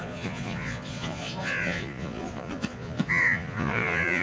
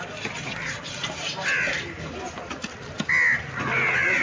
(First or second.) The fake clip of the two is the first